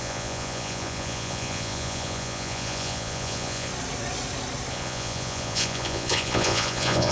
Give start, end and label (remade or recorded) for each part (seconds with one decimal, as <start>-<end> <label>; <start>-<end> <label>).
0.0-3.7 remade; 3.7-4.7 recorded; 4.7-7.1 remade

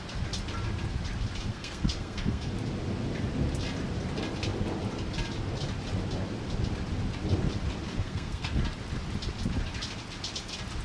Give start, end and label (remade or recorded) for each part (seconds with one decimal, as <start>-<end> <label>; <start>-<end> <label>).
0.0-1.5 recorded; 1.5-2.5 remade; 2.5-7.9 recorded; 7.9-8.6 remade; 8.6-10.8 recorded